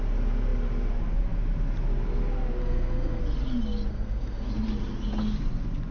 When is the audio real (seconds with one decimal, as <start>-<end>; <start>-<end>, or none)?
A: 0.0-2.6; 3.2-3.9; 4.5-5.9